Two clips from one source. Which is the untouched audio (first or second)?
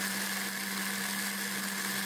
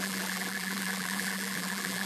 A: first